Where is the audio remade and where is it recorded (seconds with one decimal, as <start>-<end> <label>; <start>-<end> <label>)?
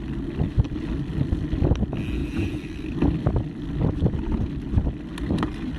0.0-2.2 recorded; 2.2-3.3 remade; 3.3-5.8 recorded